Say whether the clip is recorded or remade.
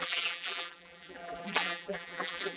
remade